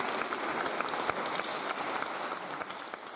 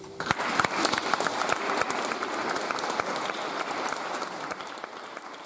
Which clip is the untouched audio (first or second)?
first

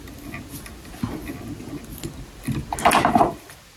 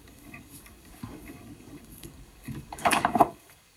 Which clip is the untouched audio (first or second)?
first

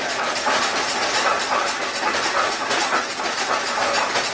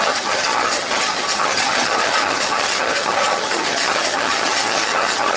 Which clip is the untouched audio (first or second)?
first